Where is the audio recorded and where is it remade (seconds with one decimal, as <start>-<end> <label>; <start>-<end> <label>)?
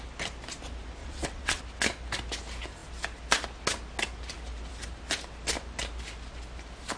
0.0-1.0 recorded; 1.0-1.6 remade; 1.6-7.0 recorded